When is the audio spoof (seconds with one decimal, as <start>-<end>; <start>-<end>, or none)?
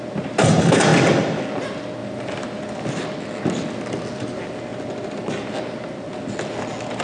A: 2.0-2.6